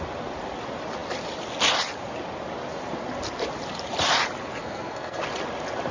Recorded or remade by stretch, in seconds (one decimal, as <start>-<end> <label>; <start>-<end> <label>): 0.0-4.6 recorded; 4.6-5.2 remade; 5.2-5.9 recorded